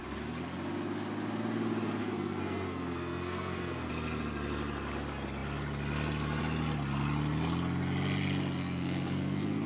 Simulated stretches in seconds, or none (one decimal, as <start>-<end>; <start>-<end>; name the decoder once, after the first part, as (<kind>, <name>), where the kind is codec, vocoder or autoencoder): 2.0-3.9 (codec, SNAC); 8.6-9.7